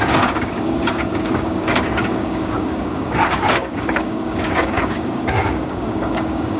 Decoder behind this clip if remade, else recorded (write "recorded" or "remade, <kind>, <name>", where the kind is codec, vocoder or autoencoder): remade, codec, DAC